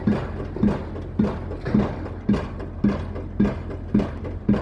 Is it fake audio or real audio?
real